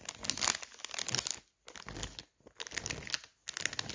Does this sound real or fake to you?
real